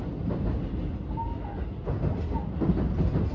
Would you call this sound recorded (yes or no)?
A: yes